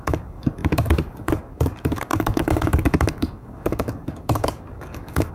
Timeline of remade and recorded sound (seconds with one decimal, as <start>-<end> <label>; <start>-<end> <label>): 0.0-5.3 remade